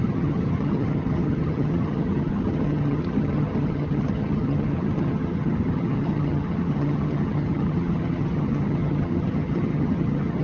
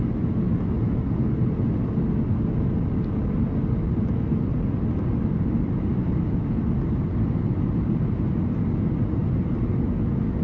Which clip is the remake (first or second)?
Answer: first